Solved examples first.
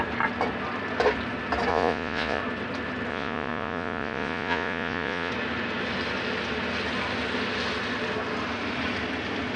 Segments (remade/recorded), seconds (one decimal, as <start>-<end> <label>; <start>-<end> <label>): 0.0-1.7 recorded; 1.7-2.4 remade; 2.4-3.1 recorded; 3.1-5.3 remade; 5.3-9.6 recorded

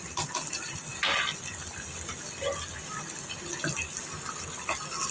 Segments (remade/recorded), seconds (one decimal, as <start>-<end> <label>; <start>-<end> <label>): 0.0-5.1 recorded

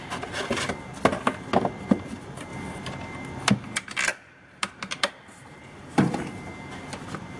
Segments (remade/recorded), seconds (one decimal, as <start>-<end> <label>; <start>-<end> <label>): 0.0-4.1 recorded; 4.1-6.2 remade; 6.2-7.4 recorded

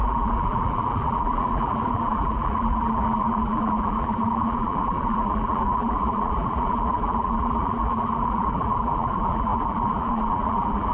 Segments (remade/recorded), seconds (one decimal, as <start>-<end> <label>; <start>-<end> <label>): 0.0-10.9 remade

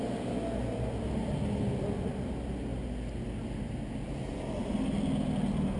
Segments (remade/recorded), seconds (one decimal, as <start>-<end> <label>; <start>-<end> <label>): 0.0-5.8 recorded

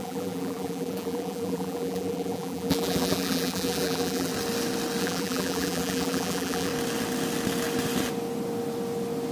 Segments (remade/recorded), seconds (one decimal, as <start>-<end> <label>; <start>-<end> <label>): 0.0-4.3 remade; 4.3-5.0 recorded; 5.0-6.7 remade; 6.7-9.3 recorded